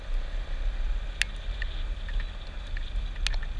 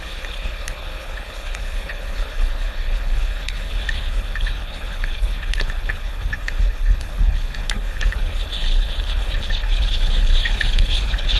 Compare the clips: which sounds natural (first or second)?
first